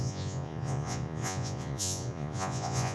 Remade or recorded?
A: remade